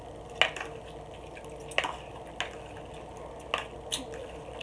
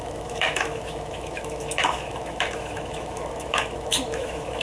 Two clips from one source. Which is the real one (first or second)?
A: first